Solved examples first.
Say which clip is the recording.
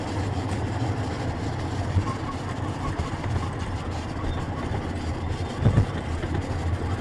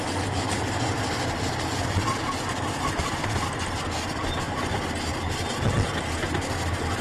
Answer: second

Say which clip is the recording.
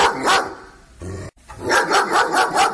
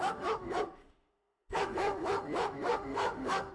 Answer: first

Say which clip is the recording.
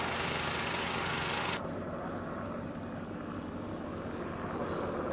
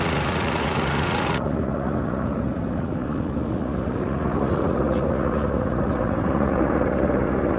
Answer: first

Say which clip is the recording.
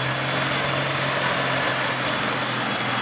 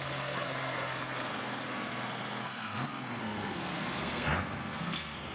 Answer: first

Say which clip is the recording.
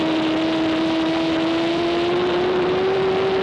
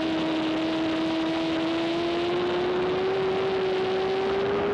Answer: second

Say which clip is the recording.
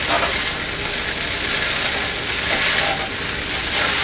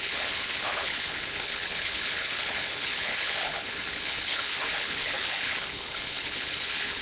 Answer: first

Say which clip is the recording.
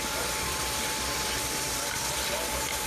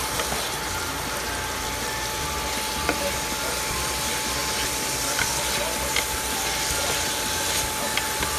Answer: second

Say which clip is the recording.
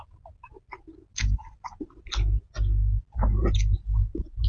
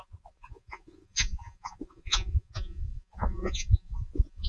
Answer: first